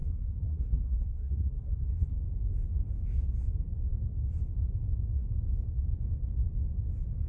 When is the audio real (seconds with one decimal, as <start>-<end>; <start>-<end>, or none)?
2.2-7.3